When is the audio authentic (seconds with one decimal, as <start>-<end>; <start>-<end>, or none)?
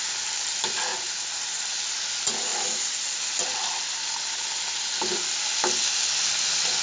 0.0-0.9; 1.7-6.8